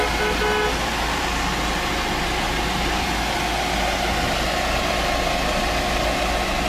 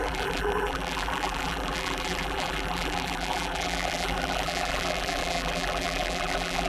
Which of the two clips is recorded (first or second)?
first